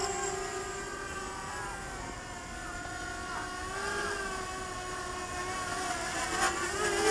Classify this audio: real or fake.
real